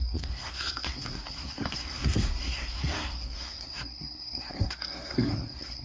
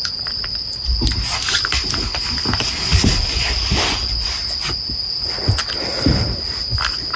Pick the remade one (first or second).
first